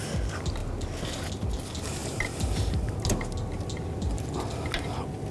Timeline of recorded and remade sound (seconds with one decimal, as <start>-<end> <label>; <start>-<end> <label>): 0.0-5.3 recorded